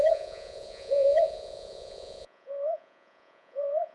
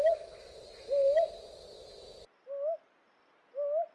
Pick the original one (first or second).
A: second